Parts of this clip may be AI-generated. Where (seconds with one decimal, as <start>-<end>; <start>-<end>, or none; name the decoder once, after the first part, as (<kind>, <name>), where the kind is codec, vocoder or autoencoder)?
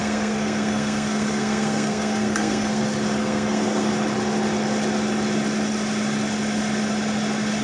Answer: 0.0-2.8 (codec, SNAC); 3.2-3.9